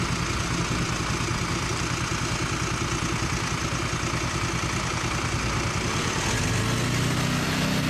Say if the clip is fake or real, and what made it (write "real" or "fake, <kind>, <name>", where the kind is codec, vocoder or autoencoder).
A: real